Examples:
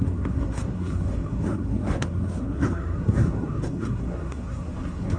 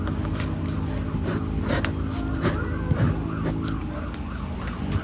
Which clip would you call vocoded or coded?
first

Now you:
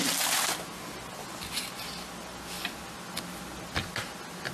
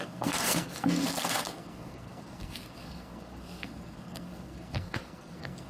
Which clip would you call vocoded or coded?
second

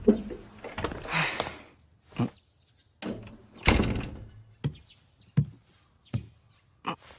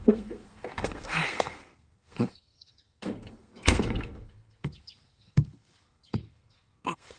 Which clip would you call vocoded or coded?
second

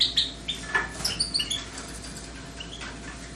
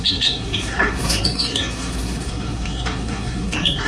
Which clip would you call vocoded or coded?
second